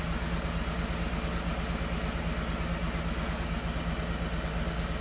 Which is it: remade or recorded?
recorded